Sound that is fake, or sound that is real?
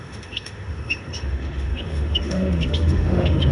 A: fake